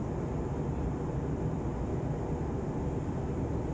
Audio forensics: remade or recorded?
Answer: recorded